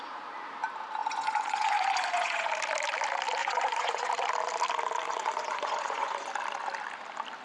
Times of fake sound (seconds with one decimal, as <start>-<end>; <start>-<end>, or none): 1.0-2.5; 3.4-4.1; 5.1-6.3